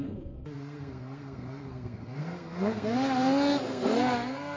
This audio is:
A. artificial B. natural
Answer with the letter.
A